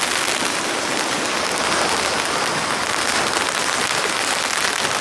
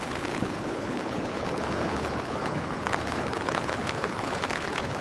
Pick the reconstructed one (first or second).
second